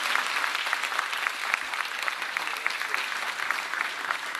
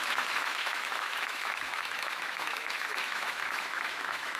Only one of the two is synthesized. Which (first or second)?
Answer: second